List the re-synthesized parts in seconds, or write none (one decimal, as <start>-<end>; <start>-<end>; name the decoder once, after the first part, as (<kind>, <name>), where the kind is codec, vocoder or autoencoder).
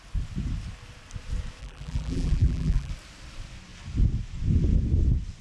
1.6-2.9 (vocoder, BigVGAN v2)